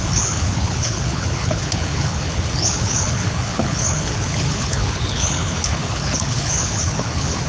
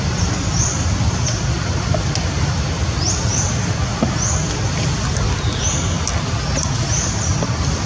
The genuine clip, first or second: second